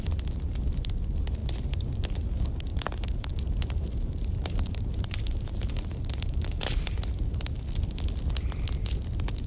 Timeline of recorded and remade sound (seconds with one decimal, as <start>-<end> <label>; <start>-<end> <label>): 0.0-2.7 recorded; 2.7-7.0 remade; 7.0-9.5 recorded